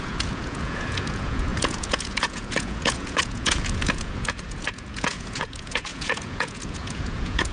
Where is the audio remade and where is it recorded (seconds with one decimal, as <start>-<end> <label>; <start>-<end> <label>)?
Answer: 0.0-7.5 remade